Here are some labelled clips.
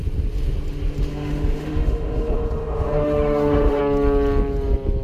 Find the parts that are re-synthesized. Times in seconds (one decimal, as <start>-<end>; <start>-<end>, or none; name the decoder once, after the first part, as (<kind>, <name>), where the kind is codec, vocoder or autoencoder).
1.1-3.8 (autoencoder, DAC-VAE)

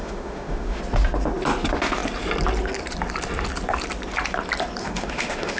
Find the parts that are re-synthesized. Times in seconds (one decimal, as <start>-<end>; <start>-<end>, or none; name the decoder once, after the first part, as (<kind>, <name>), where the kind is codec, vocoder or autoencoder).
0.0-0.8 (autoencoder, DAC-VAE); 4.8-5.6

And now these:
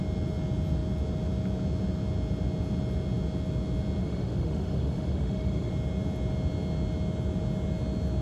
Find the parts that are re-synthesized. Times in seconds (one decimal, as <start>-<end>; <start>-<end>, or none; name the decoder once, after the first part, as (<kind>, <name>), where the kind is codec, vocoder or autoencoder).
4.0-5.7 (autoencoder, DAC-VAE)

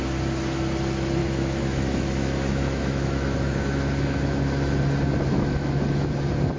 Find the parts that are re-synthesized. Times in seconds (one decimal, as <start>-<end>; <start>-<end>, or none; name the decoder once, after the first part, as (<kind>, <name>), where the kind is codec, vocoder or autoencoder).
1.2-4.8 (autoencoder, DAC-VAE); 5.3-6.1

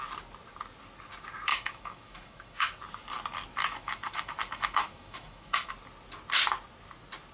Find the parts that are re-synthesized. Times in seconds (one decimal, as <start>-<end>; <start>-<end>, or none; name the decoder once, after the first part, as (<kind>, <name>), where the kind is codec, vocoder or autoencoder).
1.5-2.8 (autoencoder, DAC-VAE); 3.6-5.7